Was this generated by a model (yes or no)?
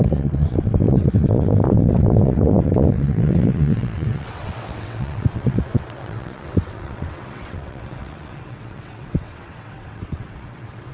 yes